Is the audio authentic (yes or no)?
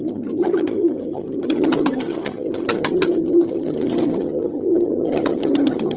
no